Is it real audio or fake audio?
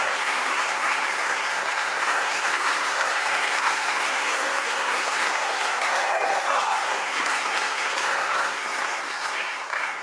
fake